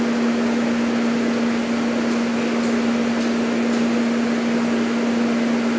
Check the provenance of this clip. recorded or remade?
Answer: recorded